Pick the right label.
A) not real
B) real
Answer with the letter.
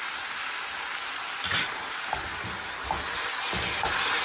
B